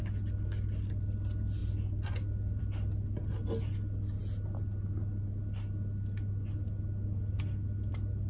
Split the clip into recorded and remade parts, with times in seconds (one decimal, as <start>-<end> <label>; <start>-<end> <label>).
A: 0.0-8.3 recorded